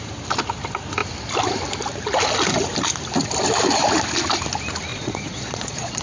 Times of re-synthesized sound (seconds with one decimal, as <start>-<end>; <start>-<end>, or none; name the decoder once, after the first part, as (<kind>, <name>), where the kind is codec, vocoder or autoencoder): 4.9-6.0 (vocoder, Vocos)